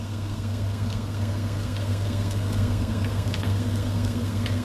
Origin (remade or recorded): remade